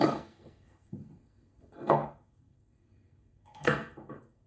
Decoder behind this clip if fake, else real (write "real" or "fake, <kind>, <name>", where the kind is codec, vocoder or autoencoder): fake, codec, SNAC